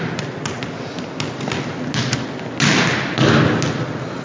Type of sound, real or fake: real